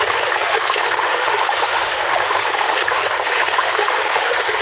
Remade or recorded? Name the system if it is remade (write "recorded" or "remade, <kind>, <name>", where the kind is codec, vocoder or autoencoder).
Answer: remade, autoencoder, DAC-VAE